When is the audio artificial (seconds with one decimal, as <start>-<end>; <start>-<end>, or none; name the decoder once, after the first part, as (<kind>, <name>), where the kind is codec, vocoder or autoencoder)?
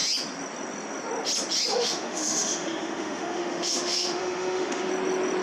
1.7-4.9 (autoencoder, DAC-VAE)